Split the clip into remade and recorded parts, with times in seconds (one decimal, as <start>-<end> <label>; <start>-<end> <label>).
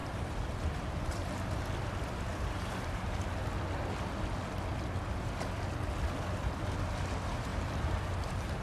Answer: 0.0-1.6 remade; 1.6-2.3 recorded; 2.3-3.4 remade; 3.4-7.5 recorded; 7.5-8.6 remade